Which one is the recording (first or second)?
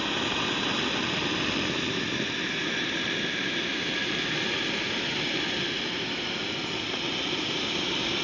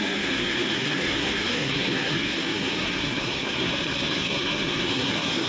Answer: first